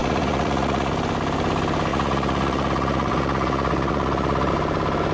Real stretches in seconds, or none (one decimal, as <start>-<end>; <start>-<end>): 0.9-1.9; 4.5-5.1